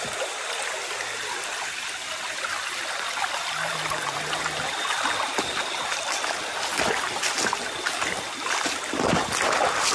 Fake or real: real